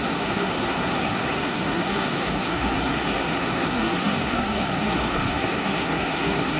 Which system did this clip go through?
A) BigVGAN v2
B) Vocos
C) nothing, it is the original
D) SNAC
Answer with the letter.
D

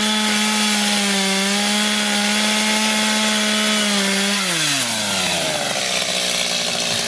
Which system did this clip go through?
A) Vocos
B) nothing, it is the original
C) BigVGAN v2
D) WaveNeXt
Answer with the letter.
B